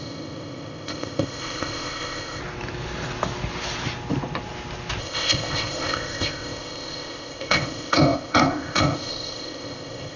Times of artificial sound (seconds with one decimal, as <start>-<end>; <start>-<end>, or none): 0.0-2.4; 5.0-10.2